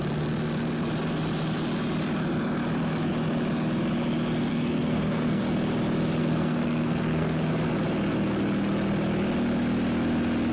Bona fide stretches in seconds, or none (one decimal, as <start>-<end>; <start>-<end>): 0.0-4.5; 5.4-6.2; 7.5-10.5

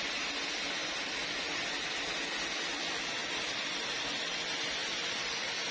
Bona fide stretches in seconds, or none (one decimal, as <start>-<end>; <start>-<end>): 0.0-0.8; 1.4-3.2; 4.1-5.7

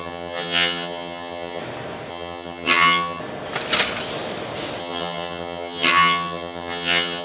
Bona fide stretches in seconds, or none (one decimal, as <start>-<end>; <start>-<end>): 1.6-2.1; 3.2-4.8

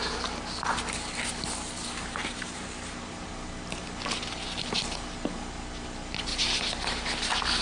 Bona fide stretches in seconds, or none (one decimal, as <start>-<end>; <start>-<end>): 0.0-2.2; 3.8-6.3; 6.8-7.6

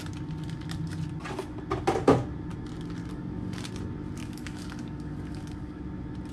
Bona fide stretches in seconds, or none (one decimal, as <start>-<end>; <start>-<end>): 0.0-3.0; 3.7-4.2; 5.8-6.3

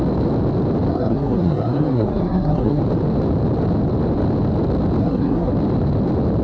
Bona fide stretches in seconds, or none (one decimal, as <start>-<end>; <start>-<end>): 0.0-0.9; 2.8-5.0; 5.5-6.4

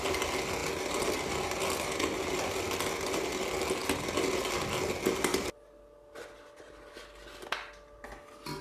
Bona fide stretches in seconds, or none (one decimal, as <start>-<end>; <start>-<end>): 0.0-8.6